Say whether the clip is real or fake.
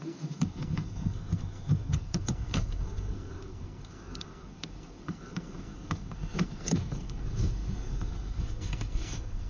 fake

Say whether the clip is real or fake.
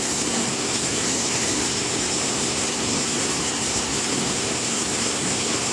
fake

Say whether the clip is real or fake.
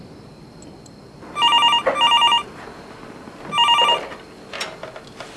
real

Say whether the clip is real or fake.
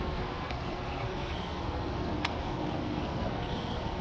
fake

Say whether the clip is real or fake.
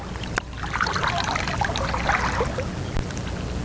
real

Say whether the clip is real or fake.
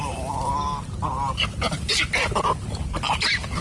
real